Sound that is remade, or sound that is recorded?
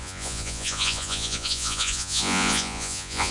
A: remade